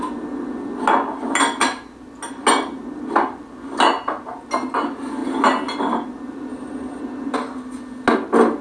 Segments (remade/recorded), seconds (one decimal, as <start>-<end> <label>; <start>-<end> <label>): 0.0-6.5 recorded; 6.5-7.0 remade; 7.0-8.6 recorded